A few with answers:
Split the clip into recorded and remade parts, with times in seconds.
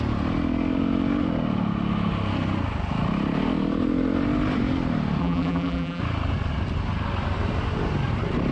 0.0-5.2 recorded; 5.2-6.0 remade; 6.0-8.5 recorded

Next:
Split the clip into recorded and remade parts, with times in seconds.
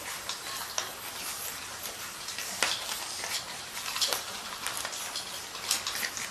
0.0-1.2 recorded; 1.2-5.0 remade; 5.0-6.3 recorded